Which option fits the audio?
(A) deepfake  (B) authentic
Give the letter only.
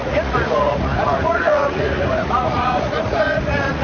A